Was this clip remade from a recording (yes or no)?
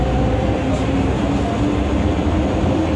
no